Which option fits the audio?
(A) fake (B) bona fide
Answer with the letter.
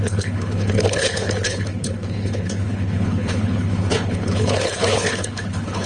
A